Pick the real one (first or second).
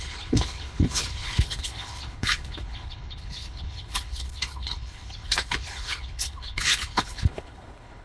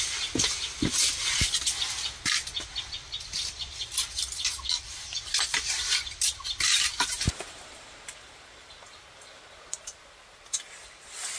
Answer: second